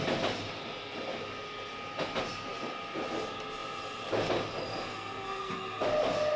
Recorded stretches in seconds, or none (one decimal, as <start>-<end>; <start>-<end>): 0.0-4.9; 5.5-6.4